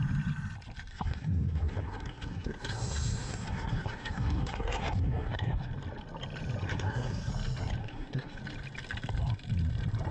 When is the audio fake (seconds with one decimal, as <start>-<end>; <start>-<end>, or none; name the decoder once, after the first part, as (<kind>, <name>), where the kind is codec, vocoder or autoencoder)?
0.9-5.7 (codec, SNAC); 6.7-7.3; 7.8-8.4